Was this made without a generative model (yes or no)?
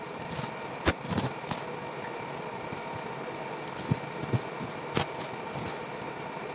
yes